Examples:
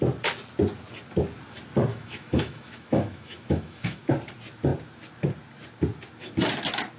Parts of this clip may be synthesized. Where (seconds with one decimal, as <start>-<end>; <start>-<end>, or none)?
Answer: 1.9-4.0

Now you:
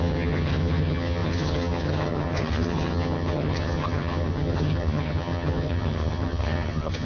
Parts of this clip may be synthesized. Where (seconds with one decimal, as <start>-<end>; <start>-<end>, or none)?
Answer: 0.0-7.0

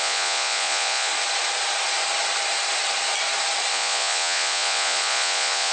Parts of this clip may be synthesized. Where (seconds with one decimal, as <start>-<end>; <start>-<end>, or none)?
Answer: 0.0-1.1; 3.7-5.7